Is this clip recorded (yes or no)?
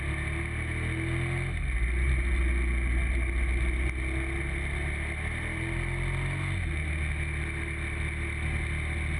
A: yes